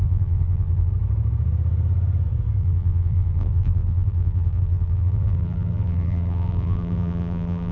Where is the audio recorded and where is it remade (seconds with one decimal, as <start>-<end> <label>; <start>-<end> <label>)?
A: 0.0-0.9 remade; 0.9-2.6 recorded; 2.6-7.7 remade